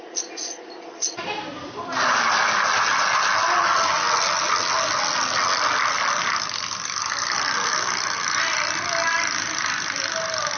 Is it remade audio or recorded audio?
recorded